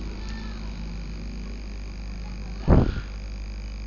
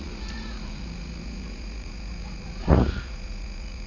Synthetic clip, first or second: second